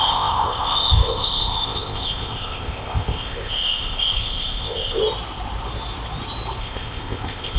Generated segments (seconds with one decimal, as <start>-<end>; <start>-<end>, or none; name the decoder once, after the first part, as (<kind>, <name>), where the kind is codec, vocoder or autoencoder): 0.0-5.0 (codec, ZipCodec); 6.6-7.6